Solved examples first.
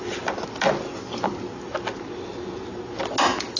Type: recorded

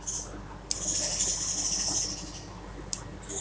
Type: recorded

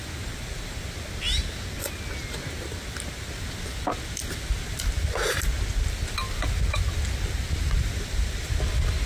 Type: recorded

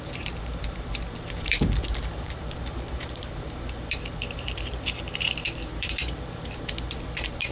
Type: remade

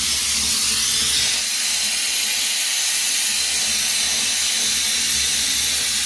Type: recorded